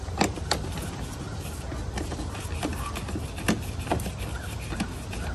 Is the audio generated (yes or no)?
no